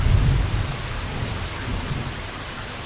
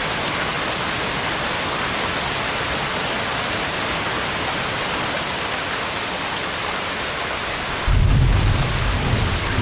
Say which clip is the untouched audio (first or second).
second